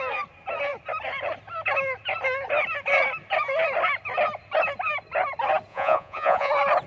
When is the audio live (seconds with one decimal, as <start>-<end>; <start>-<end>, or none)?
0.0-5.7; 6.5-6.9